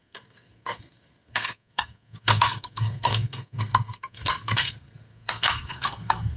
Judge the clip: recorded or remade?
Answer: remade